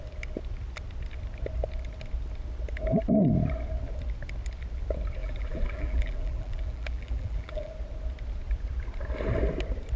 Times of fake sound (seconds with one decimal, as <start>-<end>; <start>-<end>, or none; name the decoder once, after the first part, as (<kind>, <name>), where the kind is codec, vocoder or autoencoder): 5.2-7.7 (vocoder, BigVGAN v2)